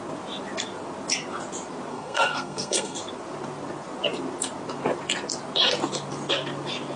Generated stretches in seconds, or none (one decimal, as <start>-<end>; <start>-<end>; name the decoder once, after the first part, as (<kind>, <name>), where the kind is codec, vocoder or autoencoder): 1.9-3.0 (codec, SNAC)